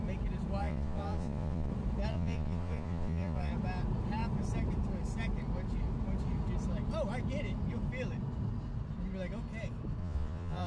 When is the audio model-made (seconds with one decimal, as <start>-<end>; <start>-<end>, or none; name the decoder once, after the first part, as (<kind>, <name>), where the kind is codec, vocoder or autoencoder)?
0.6-1.7 (vocoder, Vocos); 2.1-3.5; 10.0-10.7